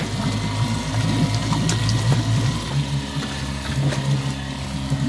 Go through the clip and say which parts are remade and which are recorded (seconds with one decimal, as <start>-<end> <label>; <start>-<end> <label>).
0.0-5.1 recorded